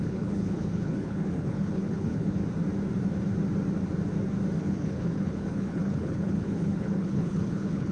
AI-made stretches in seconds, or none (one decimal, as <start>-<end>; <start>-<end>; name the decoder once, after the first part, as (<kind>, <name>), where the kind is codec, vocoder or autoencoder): 0.0-2.4 (codec, HILCodec); 4.6-7.9